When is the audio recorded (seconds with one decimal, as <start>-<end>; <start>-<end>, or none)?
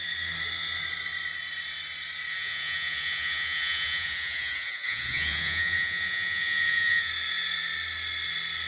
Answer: 0.0-2.3; 7.1-8.7